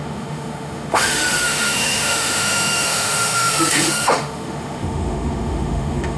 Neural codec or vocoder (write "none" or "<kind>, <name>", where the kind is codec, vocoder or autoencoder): autoencoder, DAC-VAE